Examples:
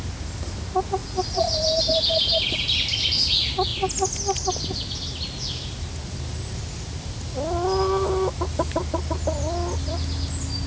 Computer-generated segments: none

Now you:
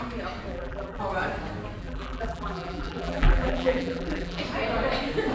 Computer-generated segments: 0.5-1.0 (vocoder, BigVGAN v2); 1.8-4.4

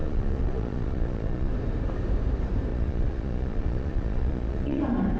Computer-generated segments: 0.0-1.5 (vocoder, Vocos); 2.7-4.8

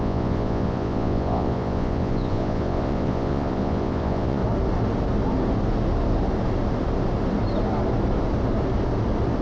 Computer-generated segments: 0.0-4.4 (vocoder, Vocos)